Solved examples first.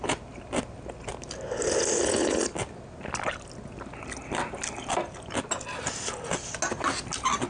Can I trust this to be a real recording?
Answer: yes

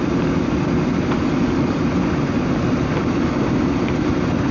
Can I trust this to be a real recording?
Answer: yes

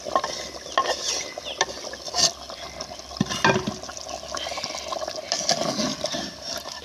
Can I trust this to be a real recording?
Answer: yes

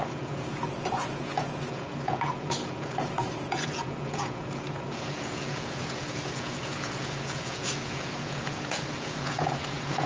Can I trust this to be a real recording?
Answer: no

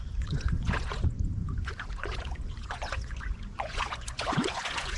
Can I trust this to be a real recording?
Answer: no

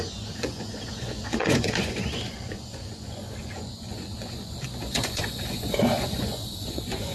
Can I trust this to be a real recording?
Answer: no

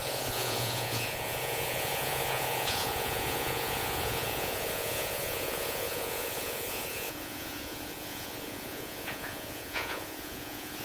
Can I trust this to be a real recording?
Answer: no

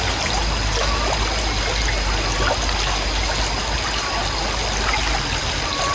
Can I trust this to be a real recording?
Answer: yes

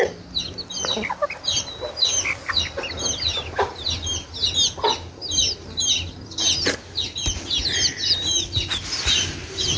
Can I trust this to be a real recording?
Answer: yes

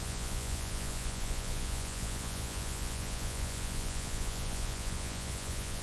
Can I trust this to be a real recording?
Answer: no